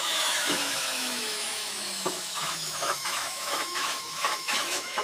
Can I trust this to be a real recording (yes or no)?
no